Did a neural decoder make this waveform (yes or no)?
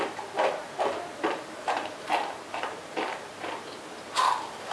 yes